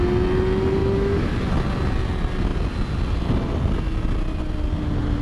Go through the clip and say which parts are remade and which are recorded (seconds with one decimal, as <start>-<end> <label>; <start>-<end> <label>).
0.0-0.8 recorded; 0.8-1.3 remade; 1.3-5.2 recorded